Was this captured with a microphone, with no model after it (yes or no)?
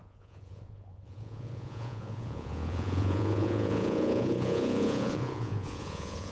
no